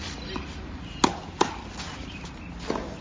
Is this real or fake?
real